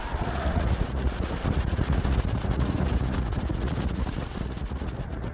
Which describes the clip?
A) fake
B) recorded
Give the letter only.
A